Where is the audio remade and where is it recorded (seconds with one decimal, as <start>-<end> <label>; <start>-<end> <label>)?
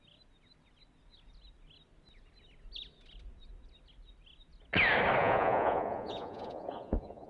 0.0-5.2 recorded; 5.2-7.3 remade